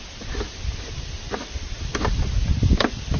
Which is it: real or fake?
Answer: real